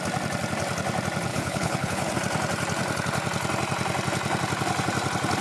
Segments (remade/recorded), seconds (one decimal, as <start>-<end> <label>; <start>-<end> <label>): 0.0-1.3 recorded; 1.3-2.1 remade; 2.1-5.4 recorded